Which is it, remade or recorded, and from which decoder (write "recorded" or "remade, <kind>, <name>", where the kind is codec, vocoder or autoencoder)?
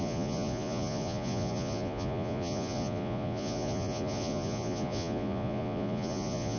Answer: remade, vocoder, Vocos